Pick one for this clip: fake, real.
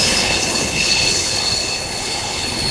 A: fake